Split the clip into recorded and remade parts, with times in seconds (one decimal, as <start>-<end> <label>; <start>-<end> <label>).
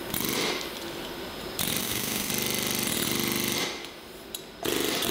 0.0-1.8 recorded; 1.8-2.3 remade; 2.3-5.1 recorded